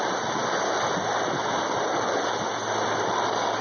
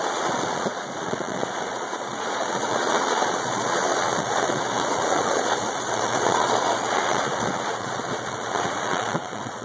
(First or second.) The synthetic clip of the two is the second